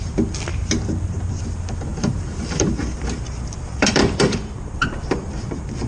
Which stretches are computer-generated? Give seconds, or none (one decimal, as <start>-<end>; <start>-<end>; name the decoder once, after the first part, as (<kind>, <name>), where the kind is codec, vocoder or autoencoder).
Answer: 1.9-5.3 (vocoder, BigVGAN v2)